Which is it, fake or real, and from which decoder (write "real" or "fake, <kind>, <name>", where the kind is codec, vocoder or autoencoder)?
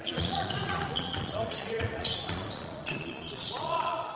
fake, vocoder, Vocos